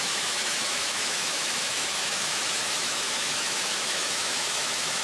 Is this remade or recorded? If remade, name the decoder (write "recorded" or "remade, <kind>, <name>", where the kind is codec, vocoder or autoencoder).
remade, autoencoder, DAC-VAE